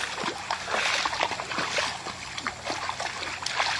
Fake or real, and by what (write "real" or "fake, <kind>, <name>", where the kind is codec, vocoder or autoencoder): real